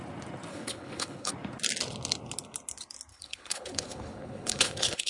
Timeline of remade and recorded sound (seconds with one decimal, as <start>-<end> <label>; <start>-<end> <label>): 0.0-0.5 recorded; 0.5-1.3 remade; 1.3-3.1 recorded; 3.1-5.1 remade